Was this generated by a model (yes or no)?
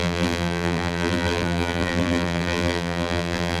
yes